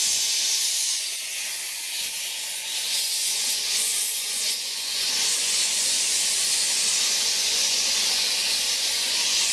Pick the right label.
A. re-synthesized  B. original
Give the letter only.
A